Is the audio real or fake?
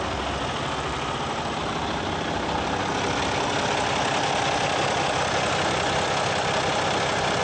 real